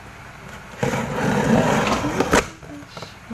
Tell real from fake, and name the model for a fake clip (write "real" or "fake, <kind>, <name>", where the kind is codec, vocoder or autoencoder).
real